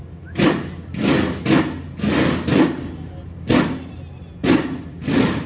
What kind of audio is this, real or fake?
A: real